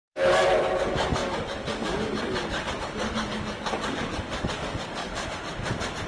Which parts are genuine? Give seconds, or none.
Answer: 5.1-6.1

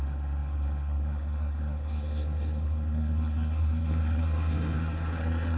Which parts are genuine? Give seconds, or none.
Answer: none

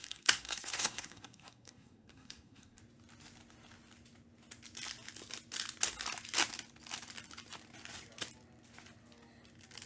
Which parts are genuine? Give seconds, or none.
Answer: 2.8-9.9

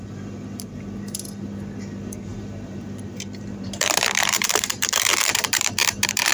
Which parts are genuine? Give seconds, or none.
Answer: 0.0-2.3

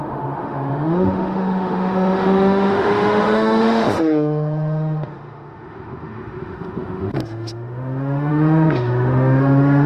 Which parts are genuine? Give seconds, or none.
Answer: none

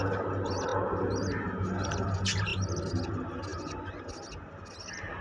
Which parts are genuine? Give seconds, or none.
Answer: 0.0-5.2